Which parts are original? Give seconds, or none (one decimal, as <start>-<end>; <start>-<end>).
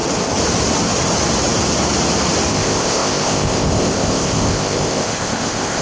0.0-2.5